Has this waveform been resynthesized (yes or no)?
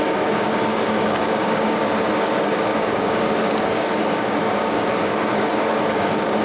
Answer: yes